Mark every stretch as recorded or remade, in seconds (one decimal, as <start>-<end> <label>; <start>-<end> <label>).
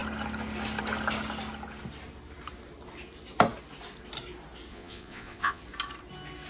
0.0-4.7 recorded; 4.7-5.6 remade; 5.6-6.5 recorded